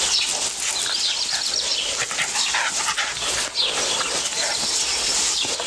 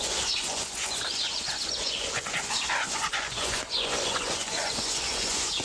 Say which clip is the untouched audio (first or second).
first